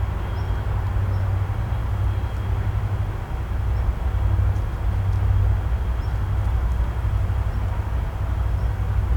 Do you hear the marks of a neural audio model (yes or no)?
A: no